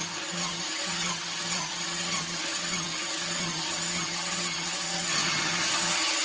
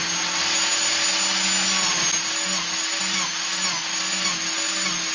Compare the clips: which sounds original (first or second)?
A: second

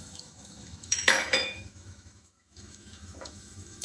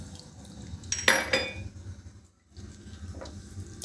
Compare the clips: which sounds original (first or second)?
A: second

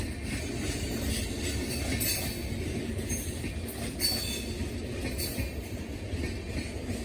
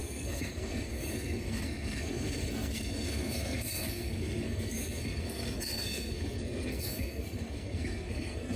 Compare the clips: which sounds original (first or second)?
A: first